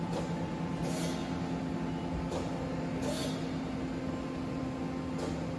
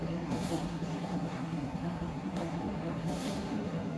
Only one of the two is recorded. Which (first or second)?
first